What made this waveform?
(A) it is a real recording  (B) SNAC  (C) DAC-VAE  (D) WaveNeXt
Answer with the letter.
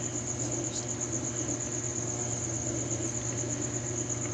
A